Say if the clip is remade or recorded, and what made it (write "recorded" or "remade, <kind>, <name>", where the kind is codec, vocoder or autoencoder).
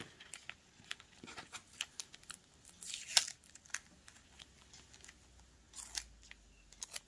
recorded